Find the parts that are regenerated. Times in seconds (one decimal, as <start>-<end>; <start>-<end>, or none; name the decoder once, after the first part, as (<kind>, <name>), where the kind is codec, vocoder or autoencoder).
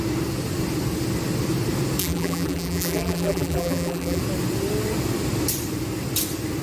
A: 2.0-4.2 (vocoder, BigVGAN v2)